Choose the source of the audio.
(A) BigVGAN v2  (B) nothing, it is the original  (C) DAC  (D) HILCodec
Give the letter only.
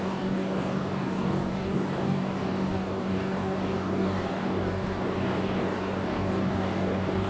C